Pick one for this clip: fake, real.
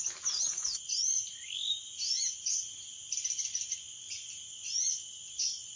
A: real